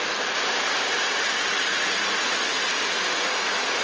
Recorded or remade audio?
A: recorded